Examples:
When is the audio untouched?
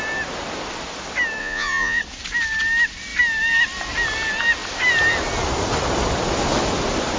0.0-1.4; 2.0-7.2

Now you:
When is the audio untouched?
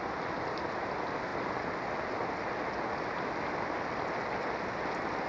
0.0-5.3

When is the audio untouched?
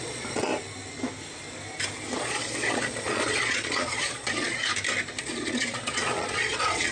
0.5-2.2; 4.7-5.2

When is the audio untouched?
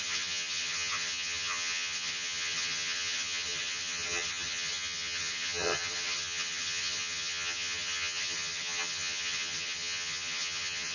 none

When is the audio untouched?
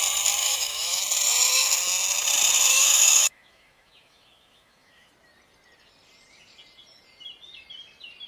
0.0-0.4; 1.0-2.7; 5.1-8.3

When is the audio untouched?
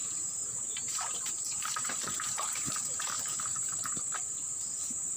3.1-5.2